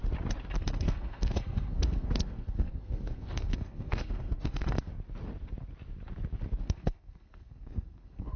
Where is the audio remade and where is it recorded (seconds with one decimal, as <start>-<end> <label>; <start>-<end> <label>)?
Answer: 0.0-0.6 recorded; 0.6-4.9 remade; 4.9-6.6 recorded; 6.6-8.4 remade